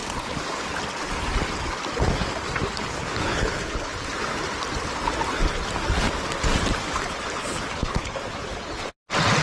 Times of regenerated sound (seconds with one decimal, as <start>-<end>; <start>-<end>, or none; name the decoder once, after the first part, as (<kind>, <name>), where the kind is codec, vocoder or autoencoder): 2.8-3.9 (codec, HILCodec); 7.4-8.2